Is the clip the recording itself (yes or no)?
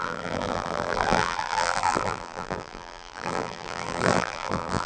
no